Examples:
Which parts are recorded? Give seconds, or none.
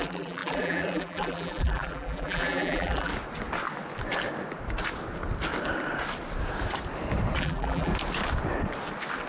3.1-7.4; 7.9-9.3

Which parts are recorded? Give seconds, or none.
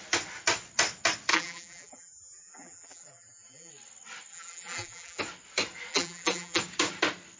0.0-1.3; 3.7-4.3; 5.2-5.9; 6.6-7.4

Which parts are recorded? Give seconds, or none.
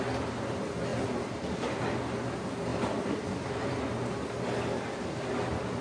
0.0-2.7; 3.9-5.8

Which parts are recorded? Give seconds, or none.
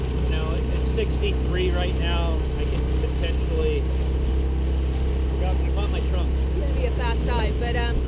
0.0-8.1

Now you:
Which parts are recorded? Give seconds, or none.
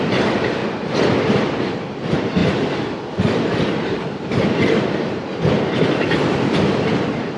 none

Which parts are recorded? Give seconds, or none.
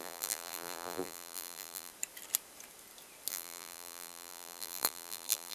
1.9-3.3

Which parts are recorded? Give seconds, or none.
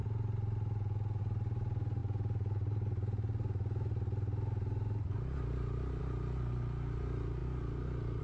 0.0-8.2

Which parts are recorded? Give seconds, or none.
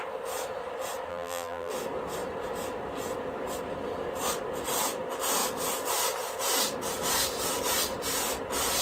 0.0-1.1; 1.7-8.8